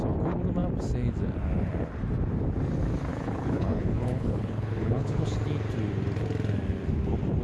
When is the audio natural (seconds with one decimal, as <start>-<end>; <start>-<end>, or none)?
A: 0.0-3.1; 5.2-7.4